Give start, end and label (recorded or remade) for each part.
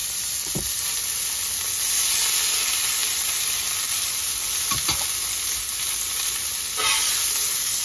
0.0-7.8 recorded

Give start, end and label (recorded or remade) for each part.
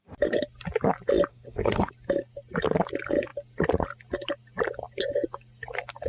0.0-1.3 recorded; 1.3-1.9 remade; 1.9-6.1 recorded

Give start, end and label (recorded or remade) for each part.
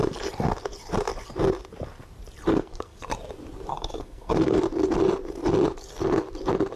0.0-2.5 recorded; 2.5-3.0 remade; 3.0-3.7 recorded; 3.7-4.6 remade; 4.6-6.8 recorded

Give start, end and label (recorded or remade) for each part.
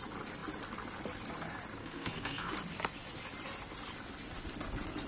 0.0-1.8 recorded; 1.8-2.5 remade; 2.5-5.1 recorded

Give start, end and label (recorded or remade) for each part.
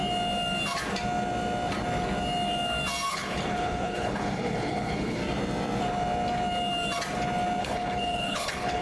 0.0-3.1 recorded; 3.1-5.2 remade; 5.2-7.6 recorded; 7.6-8.8 remade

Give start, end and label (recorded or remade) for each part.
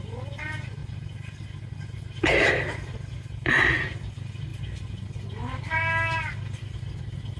0.0-7.4 recorded